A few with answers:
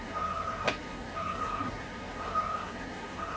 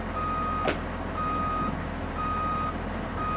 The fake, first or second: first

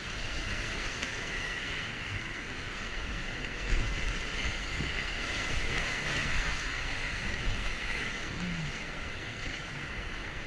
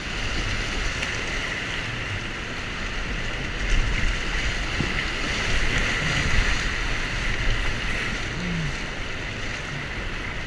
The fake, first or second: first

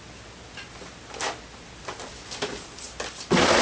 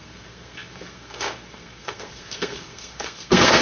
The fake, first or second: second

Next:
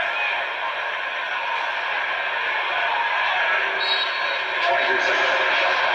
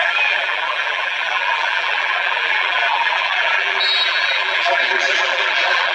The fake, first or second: second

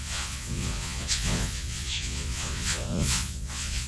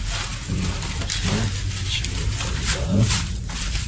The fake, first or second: first